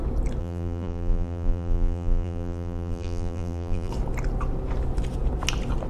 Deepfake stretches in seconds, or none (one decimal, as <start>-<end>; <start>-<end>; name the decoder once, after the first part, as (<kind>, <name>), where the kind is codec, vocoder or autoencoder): 0.4-3.9 (vocoder, BigVGAN v2)